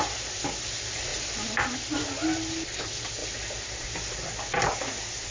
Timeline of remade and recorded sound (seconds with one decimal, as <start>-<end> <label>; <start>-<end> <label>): 0.0-5.3 recorded